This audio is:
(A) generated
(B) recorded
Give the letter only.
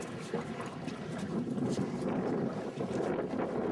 B